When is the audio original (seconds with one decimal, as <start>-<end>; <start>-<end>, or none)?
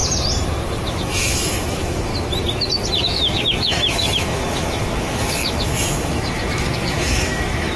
0.0-0.9; 2.1-3.0